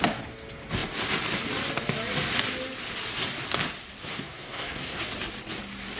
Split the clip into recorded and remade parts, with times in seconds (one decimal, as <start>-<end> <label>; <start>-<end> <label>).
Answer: 0.0-4.1 recorded; 4.1-5.0 remade; 5.0-6.0 recorded